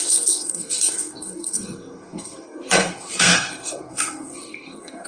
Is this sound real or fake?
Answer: fake